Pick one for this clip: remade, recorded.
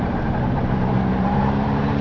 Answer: remade